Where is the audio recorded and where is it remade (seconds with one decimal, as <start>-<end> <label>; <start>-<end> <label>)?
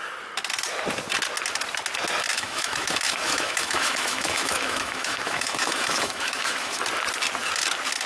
0.0-2.3 recorded; 2.3-6.8 remade; 6.8-8.1 recorded